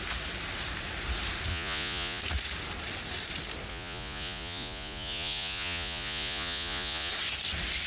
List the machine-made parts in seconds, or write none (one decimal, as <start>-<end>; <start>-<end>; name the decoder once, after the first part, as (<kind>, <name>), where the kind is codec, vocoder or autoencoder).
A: 1.5-2.2 (vocoder, Vocos); 3.7-7.1